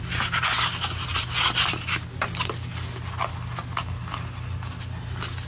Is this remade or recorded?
recorded